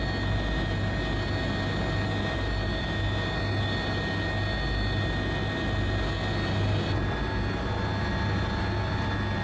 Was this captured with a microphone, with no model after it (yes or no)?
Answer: yes